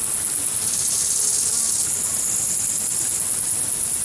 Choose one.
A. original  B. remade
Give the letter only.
A